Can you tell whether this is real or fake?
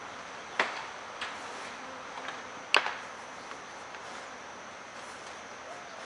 real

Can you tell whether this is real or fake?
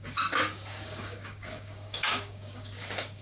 fake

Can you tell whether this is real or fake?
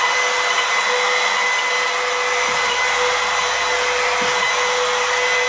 real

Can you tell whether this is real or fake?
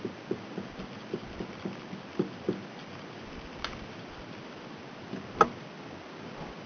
real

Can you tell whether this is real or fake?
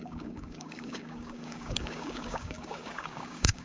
fake